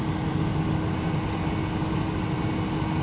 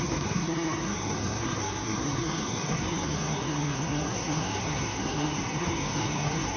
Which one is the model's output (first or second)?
second